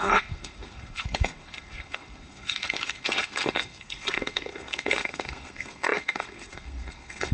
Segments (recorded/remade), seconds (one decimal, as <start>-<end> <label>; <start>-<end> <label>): 0.0-7.3 remade